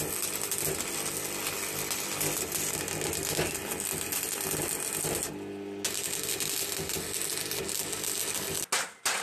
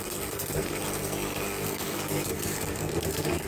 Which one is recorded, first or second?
first